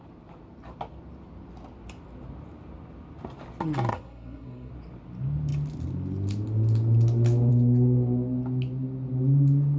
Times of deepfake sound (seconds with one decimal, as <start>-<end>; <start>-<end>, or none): 3.9-4.7